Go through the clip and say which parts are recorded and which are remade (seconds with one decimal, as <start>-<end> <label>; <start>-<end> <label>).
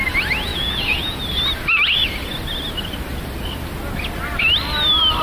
0.0-0.5 recorded; 0.5-1.2 remade; 1.2-5.2 recorded